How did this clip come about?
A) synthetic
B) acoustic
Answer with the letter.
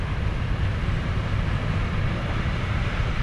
B